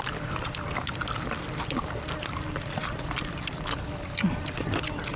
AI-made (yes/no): no